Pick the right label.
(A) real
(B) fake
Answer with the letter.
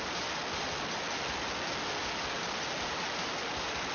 A